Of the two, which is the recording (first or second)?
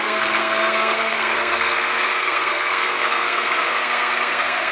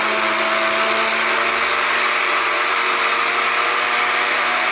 second